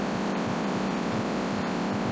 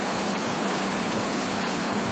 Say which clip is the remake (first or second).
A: second